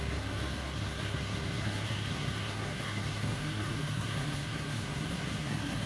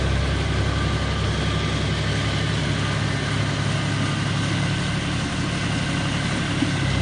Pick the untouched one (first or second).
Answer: second